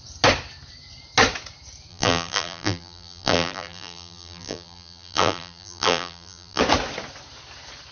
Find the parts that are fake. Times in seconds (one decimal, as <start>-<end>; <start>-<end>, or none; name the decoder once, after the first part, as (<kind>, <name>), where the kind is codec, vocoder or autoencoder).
1.9-6.6 (vocoder, BigVGAN v2)